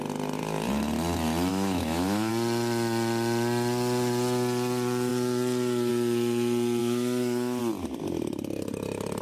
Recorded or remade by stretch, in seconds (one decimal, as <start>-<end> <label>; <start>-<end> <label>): 0.0-1.5 recorded; 1.5-2.3 remade; 2.3-6.8 recorded; 6.8-7.6 remade; 7.6-9.2 recorded